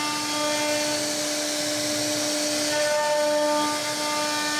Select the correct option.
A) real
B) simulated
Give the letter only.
A